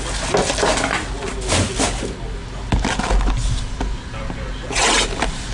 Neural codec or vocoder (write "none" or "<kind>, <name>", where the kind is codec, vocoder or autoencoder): none